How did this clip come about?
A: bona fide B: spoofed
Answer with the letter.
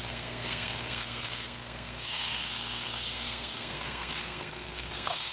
B